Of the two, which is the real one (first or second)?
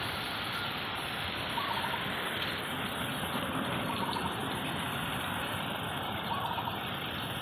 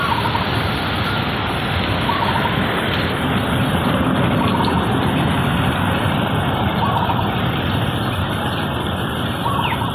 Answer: second